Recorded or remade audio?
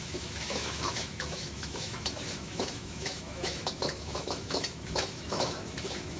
remade